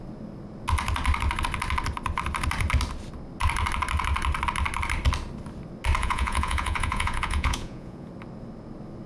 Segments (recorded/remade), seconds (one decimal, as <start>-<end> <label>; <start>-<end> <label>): 0.0-6.0 recorded; 6.0-8.1 remade; 8.1-9.1 recorded